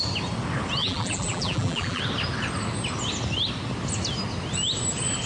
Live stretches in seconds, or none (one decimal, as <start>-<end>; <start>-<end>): 0.0-0.8; 2.0-5.3